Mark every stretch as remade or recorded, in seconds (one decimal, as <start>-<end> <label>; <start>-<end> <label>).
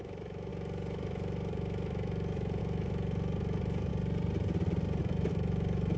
0.0-3.9 remade; 3.9-5.0 recorded; 5.0-6.0 remade